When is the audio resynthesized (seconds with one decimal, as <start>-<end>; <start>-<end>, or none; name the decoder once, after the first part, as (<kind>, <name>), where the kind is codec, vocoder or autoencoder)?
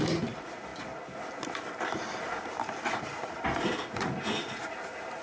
none